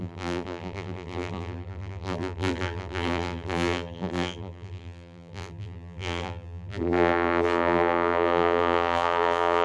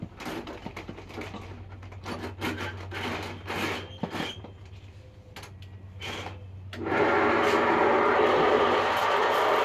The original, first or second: second